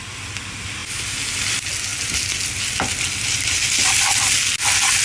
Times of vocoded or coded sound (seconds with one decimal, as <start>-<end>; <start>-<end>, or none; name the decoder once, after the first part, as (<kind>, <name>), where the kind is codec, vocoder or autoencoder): none